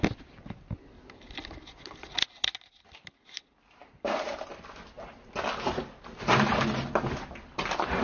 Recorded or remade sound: recorded